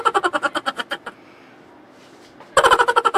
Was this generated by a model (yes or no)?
no